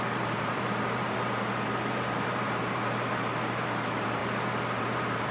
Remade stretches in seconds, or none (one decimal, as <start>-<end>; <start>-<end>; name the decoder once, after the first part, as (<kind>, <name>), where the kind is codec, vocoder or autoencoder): 0.0-4.2 (vocoder, BigVGAN v2); 4.8-5.3

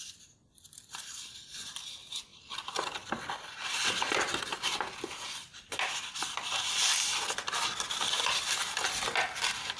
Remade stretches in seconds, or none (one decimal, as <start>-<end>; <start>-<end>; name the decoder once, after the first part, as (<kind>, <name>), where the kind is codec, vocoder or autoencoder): none